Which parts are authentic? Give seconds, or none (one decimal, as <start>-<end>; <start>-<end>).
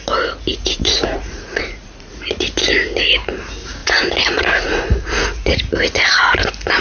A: 0.0-0.5; 2.1-3.8; 5.6-6.8